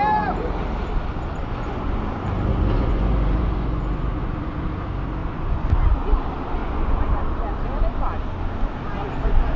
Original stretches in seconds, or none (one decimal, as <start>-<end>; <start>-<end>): 0.0-1.4; 2.0-2.5; 4.6-5.2; 5.7-6.6; 7.2-9.6